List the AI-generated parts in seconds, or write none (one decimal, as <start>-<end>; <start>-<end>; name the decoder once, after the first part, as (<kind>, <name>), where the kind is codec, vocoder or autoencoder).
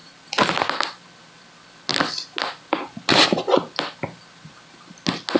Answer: none